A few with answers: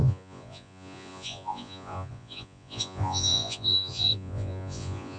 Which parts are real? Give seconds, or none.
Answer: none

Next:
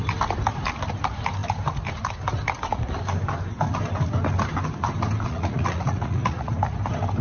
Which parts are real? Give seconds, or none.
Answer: 0.0-5.3; 6.5-7.2

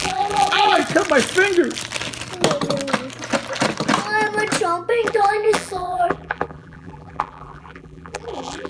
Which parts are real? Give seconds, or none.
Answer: 0.8-4.9

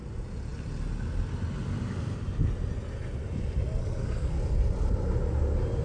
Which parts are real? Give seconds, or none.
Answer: 0.0-3.8; 4.4-5.8

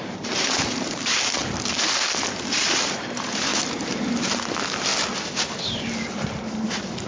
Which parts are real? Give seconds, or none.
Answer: 1.4-2.7; 4.9-6.5

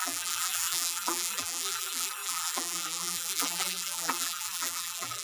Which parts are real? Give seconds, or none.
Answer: none

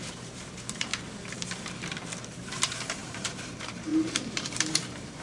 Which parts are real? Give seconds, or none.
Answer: 0.9-2.3

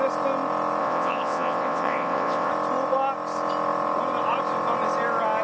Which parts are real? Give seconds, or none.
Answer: 0.0-0.8; 2.5-5.4